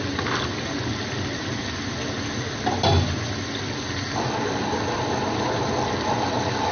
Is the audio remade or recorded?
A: recorded